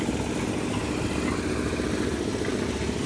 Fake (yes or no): no